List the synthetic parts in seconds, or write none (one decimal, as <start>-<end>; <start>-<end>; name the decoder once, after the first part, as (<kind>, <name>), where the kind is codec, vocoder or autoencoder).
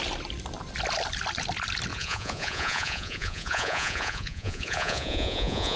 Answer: 1.9-5.8 (vocoder, Vocos)